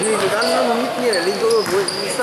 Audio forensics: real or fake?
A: real